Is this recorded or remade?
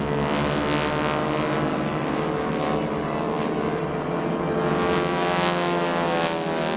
recorded